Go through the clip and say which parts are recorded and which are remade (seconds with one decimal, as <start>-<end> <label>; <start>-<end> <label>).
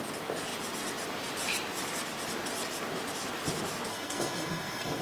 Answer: 0.0-3.9 recorded; 3.9-5.0 remade